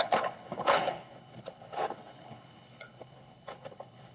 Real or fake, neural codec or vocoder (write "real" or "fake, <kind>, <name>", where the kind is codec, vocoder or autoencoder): fake, codec, HILCodec